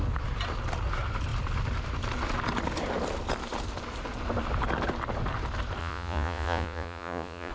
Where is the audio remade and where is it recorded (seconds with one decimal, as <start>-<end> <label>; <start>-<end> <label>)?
0.0-5.8 recorded; 5.8-7.5 remade